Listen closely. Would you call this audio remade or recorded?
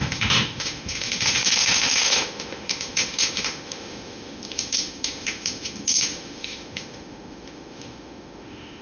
remade